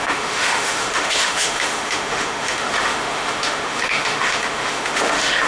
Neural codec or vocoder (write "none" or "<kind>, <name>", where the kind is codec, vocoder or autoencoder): autoencoder, DAC-VAE